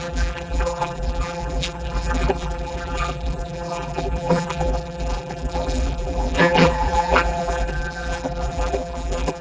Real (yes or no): no